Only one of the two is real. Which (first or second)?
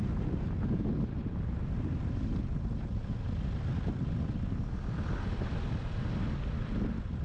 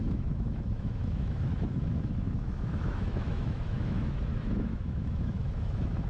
first